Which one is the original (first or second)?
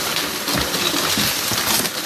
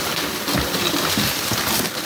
first